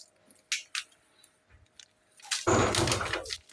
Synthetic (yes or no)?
no